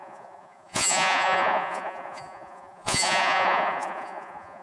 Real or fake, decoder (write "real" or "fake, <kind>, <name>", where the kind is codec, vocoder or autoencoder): fake, vocoder, Vocos